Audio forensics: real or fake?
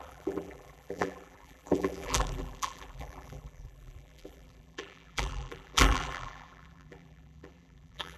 fake